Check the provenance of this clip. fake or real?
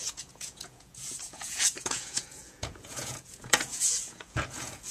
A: fake